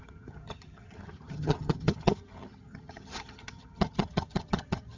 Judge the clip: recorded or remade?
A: remade